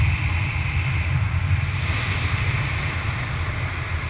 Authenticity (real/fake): real